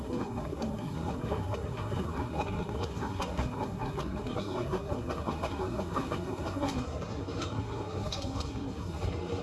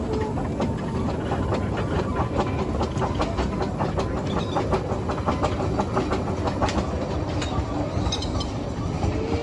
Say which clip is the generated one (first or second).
first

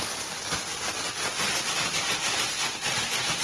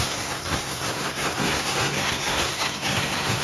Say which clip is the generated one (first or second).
second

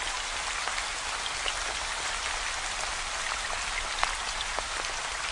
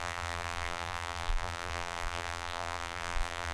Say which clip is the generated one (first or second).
second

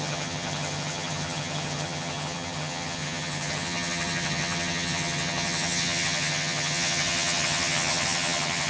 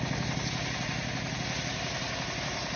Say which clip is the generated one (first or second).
first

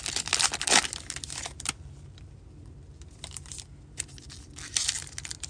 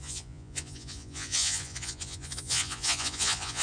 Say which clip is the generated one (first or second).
second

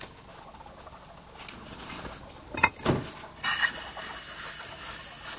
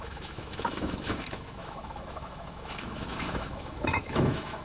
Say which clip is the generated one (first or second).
second